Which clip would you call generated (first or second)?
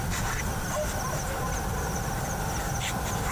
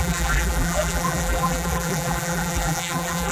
second